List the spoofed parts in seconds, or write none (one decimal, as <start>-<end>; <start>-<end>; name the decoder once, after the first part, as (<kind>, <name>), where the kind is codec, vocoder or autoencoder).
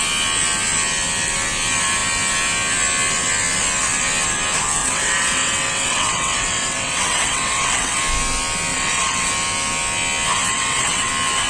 4.8-8.0 (vocoder, WaveNeXt); 8.7-9.3; 10.5-11.1